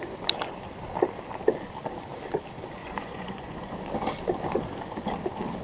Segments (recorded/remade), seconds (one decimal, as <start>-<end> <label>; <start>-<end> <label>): 0.0-2.8 recorded; 2.8-3.8 remade; 3.8-5.6 recorded